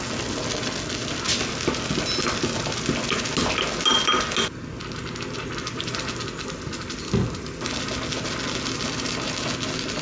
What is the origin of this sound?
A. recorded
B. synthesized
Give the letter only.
A